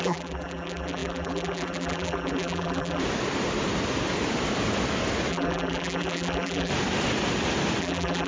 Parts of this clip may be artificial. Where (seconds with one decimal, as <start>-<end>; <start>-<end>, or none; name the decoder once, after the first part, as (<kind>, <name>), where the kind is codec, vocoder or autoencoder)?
0.0-3.0 (vocoder, BigVGAN v2); 5.3-6.7; 7.8-8.3